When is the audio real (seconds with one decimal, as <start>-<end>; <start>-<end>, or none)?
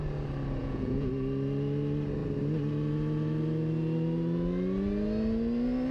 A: 0.0-0.6; 1.1-5.9